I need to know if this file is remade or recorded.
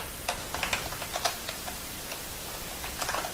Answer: remade